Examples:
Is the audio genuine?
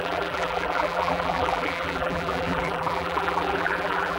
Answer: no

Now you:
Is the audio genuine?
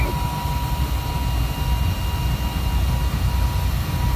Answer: yes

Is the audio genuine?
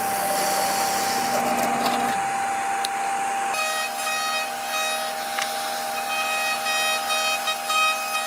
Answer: yes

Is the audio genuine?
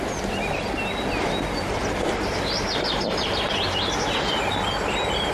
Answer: yes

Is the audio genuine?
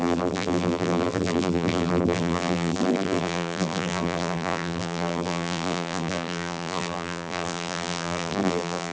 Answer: no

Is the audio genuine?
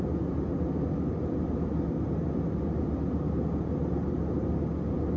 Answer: yes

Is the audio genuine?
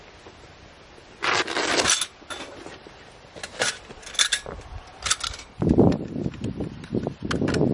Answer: yes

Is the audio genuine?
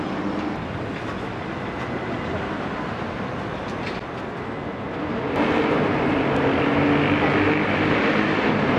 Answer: yes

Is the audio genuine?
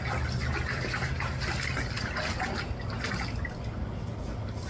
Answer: yes